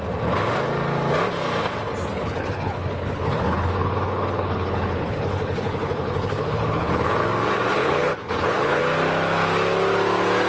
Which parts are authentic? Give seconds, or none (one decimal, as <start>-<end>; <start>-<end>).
0.0-2.1; 7.2-7.8; 8.8-10.5